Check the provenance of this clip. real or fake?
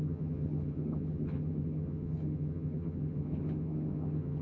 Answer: fake